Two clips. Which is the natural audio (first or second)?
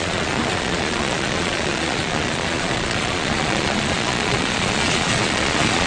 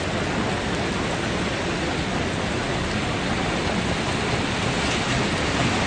second